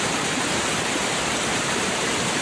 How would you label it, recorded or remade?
remade